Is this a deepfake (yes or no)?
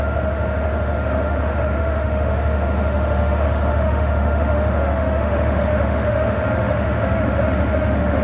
yes